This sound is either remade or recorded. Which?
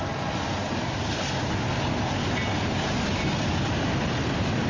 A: recorded